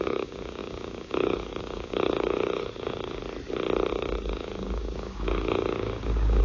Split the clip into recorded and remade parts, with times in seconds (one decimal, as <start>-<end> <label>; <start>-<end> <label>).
0.0-3.2 remade; 3.2-3.9 recorded; 3.9-6.4 remade